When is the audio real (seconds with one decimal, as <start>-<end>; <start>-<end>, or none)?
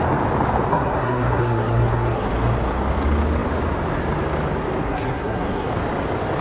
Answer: 0.0-0.7; 2.3-4.8; 5.7-6.4